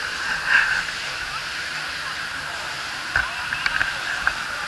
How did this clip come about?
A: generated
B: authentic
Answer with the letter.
A